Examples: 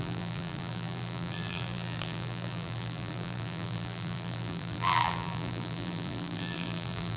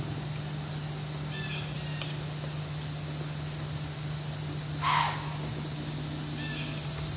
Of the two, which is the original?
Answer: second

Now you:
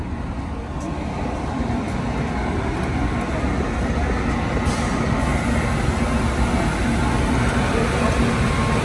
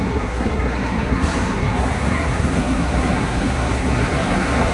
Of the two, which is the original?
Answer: first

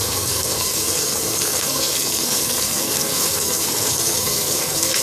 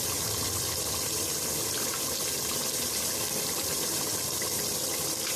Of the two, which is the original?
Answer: second